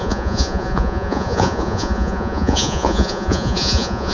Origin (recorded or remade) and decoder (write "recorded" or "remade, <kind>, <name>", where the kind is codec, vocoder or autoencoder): remade, vocoder, Vocos